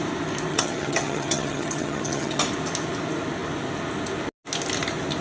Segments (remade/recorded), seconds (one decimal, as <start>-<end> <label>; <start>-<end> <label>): 0.0-0.5 recorded; 0.5-2.4 remade; 2.4-5.2 recorded